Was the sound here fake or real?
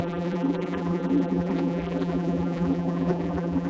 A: fake